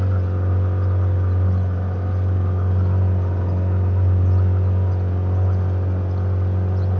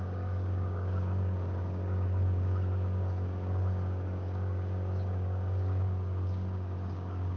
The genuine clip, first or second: first